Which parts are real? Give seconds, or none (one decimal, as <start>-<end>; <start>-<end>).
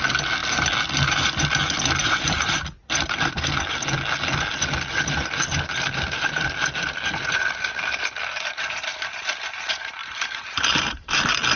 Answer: 0.0-2.0; 2.6-10.0; 10.8-11.6